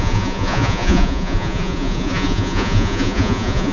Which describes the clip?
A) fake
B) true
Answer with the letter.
A